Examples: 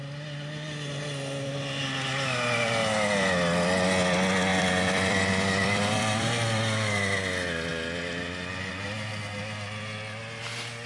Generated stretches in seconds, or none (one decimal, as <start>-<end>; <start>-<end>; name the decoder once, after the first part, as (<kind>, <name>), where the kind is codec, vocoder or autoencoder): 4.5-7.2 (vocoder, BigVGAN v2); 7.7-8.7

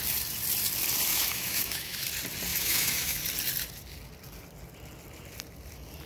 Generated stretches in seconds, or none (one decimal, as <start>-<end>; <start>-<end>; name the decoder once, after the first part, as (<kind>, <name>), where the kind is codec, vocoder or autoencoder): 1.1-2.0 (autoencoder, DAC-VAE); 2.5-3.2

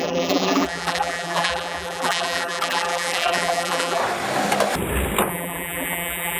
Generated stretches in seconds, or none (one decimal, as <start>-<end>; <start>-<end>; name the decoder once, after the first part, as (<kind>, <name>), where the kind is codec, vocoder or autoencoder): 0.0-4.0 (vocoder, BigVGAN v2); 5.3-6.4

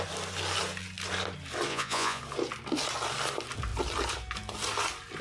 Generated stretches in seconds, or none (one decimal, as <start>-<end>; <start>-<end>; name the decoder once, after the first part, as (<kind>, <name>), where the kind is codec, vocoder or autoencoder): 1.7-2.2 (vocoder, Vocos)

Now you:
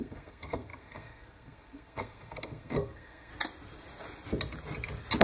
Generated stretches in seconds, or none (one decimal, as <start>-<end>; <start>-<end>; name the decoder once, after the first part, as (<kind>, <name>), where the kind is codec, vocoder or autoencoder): 0.0-3.3 (codec, SNAC)

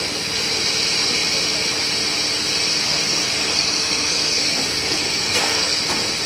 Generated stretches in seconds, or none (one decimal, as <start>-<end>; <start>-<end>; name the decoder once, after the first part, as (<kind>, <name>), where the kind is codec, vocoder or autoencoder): 2.7-5.8 (codec, SNAC)

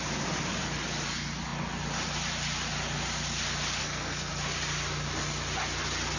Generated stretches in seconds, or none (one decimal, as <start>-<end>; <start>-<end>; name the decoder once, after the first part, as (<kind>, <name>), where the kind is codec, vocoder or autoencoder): 3.8-4.3 (codec, SNAC)

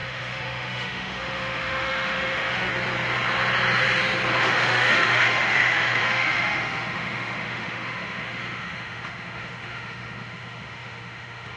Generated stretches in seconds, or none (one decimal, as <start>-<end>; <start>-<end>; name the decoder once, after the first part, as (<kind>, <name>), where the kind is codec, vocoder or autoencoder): 0.0-2.7 (autoencoder, DAC-VAE); 4.3-11.6